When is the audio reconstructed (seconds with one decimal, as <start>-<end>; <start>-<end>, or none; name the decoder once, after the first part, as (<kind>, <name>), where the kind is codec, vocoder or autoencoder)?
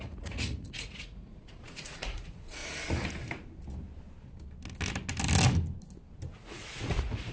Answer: 0.0-2.6 (vocoder, Vocos); 6.3-7.3